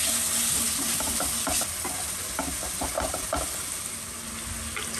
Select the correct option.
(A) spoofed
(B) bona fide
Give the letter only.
B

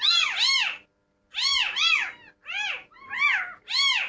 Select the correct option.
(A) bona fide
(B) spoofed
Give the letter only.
A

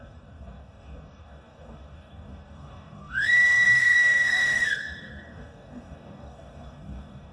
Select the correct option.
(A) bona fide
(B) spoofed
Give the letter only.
B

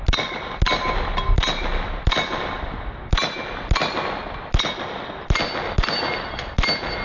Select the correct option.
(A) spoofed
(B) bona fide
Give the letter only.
B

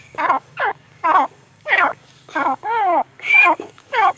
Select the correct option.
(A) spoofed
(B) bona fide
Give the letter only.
A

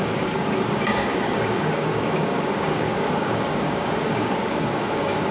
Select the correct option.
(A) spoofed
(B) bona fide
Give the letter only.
A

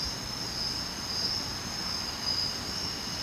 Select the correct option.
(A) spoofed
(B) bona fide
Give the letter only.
B